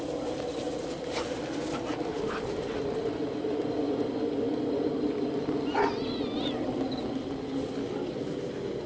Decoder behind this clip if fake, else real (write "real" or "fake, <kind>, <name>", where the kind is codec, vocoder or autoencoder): real